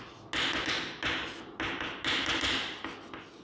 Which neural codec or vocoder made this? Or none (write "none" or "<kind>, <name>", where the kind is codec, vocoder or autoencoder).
none